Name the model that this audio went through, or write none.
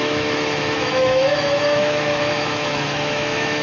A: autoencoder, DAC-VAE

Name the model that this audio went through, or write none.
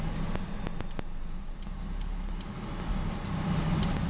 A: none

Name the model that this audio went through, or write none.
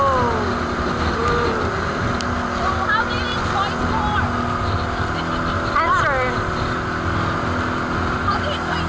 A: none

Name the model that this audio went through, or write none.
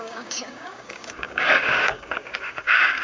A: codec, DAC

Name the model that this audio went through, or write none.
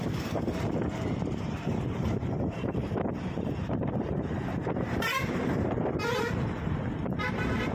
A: vocoder, BigVGAN v2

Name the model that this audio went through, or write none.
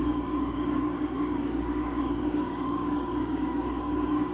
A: codec, DAC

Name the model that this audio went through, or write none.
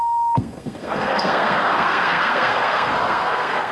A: codec, SNAC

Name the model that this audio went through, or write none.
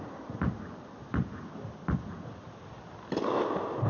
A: none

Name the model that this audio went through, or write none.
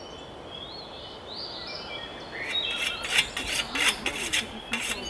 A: none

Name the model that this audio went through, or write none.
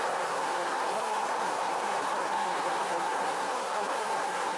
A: codec, SNAC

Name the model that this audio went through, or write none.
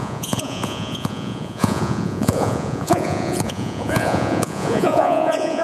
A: vocoder, Vocos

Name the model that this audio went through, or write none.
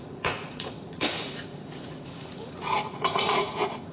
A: vocoder, Vocos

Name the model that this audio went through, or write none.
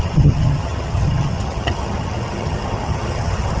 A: vocoder, HiFi-GAN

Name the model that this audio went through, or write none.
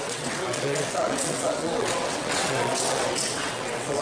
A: vocoder, WaveNeXt